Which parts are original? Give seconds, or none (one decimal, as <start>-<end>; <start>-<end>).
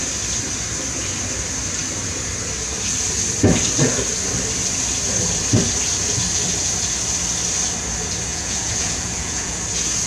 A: 0.0-8.3; 9.6-10.1